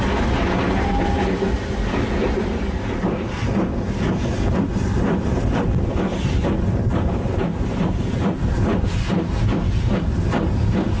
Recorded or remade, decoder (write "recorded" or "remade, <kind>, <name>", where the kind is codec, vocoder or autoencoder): recorded